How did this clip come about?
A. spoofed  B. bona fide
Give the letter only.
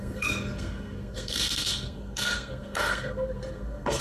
A